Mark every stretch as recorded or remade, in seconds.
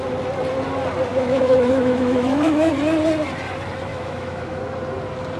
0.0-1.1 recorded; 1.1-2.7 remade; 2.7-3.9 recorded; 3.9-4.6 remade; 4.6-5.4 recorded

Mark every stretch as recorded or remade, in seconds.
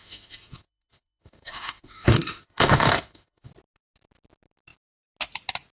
0.0-3.5 remade; 3.5-5.8 recorded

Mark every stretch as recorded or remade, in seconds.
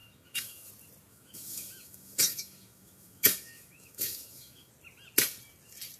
0.0-0.7 remade; 0.7-1.1 recorded; 1.1-4.7 remade; 4.7-6.0 recorded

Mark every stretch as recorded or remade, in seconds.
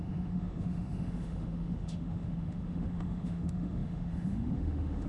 0.0-5.1 remade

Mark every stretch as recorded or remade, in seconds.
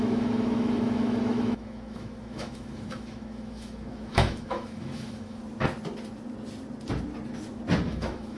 0.0-5.4 remade; 5.4-7.9 recorded; 7.9-8.4 remade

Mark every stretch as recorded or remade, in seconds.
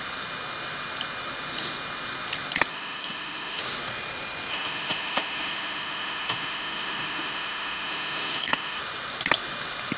0.0-2.7 recorded; 2.7-3.6 remade; 3.6-4.5 recorded; 4.5-8.8 remade; 8.8-10.0 recorded